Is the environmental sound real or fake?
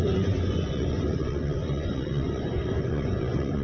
fake